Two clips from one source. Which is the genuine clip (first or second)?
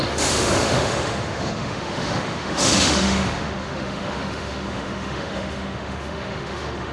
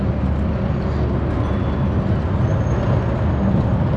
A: second